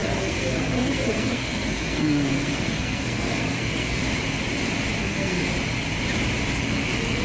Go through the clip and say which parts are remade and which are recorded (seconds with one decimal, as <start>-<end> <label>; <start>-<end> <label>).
0.0-4.0 remade; 4.0-5.0 recorded; 5.0-5.5 remade; 5.5-6.6 recorded; 6.6-7.2 remade